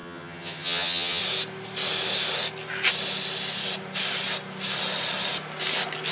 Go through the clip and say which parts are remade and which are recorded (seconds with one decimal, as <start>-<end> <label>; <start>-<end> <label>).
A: 0.0-1.2 remade; 1.2-6.1 recorded